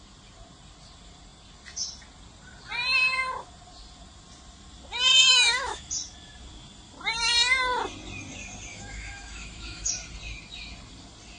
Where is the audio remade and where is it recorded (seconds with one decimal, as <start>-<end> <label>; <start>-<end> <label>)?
0.0-5.1 recorded; 5.1-5.9 remade; 5.9-8.7 recorded; 8.7-9.9 remade; 9.9-11.4 recorded